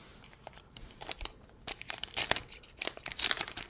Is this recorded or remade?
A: remade